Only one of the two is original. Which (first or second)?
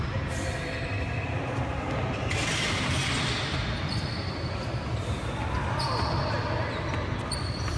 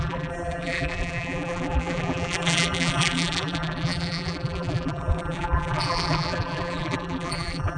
first